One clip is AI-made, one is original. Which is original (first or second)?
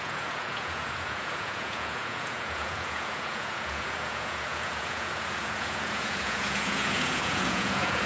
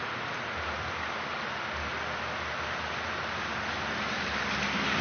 second